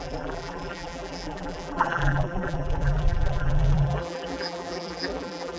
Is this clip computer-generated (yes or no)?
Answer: yes